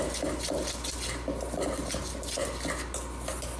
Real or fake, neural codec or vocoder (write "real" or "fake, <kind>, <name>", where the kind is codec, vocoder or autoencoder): real